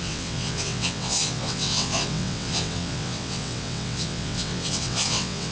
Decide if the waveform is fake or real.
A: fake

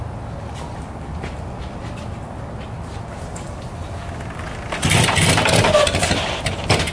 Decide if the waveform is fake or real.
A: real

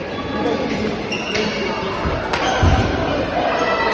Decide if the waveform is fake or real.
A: real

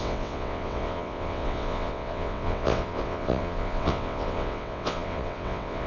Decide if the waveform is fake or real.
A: fake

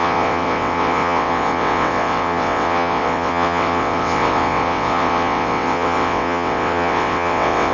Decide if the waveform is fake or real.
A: fake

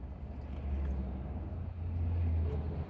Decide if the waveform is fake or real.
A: real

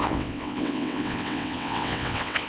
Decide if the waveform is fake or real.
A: fake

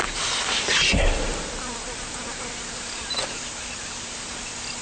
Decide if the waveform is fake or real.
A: real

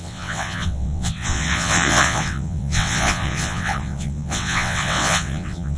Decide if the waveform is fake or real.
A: fake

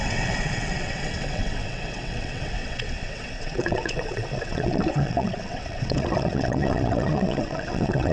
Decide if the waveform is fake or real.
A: fake